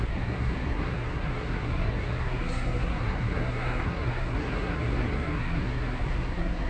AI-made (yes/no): yes